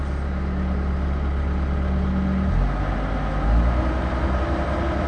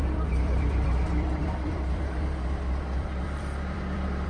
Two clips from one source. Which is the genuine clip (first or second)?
first